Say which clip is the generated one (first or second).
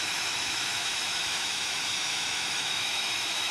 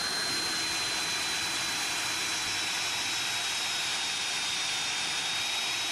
first